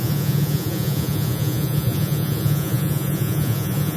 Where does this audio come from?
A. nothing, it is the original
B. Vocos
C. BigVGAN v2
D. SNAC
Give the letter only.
B